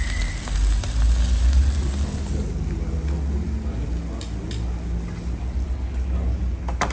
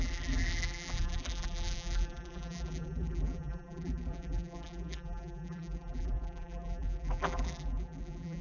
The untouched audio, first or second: first